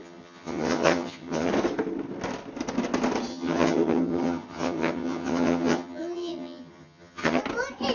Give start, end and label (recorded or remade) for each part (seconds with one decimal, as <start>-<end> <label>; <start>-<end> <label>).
0.0-1.5 remade; 1.5-3.3 recorded; 3.3-7.4 remade; 7.4-7.9 recorded